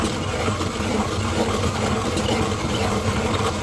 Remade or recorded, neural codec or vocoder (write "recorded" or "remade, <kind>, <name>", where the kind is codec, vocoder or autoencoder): recorded